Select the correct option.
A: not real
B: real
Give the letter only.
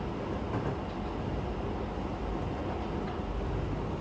B